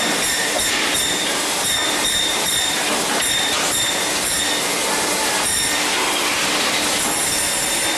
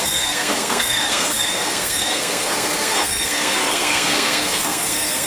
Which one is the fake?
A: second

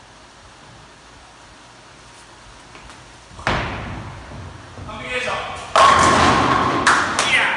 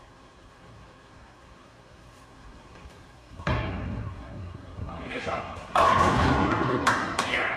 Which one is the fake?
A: second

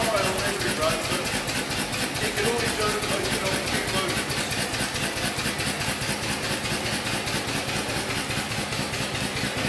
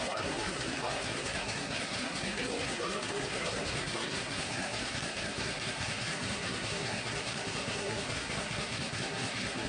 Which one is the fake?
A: second